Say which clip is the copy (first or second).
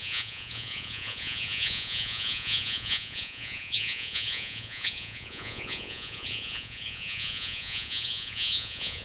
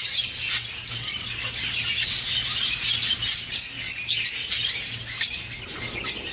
first